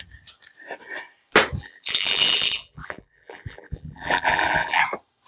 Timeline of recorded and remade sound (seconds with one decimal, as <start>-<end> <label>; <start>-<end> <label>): 0.0-1.6 recorded; 1.6-4.8 remade; 4.8-5.3 recorded